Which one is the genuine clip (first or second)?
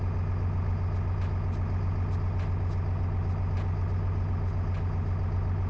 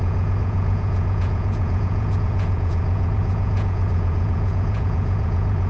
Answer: first